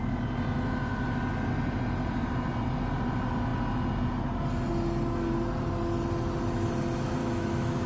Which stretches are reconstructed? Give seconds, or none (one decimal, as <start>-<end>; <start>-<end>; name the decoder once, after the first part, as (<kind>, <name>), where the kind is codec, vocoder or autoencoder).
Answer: 7.2-7.9 (autoencoder, DAC-VAE)